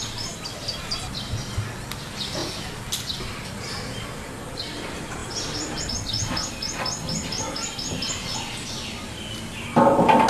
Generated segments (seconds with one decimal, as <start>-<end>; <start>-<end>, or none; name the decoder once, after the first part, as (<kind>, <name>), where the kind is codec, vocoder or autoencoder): 2.4-3.9 (vocoder, BigVGAN v2); 5.2-5.8